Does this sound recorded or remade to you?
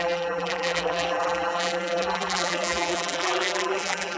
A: remade